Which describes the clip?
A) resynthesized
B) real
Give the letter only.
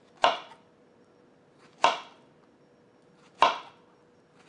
B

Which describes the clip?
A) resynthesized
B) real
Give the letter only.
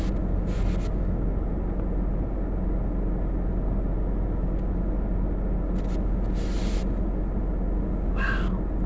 B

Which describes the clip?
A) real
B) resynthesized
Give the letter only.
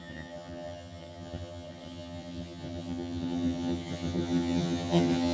B